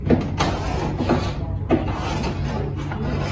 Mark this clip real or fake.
real